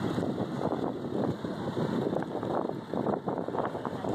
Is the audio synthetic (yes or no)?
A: no